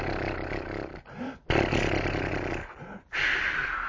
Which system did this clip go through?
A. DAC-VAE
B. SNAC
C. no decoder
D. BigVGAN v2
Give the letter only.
C